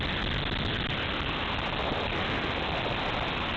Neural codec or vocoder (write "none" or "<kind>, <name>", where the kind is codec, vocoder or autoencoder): none